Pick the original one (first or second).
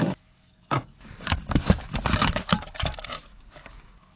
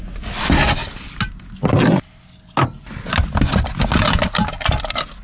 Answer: second